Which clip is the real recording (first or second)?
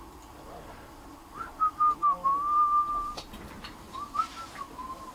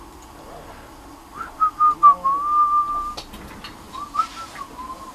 second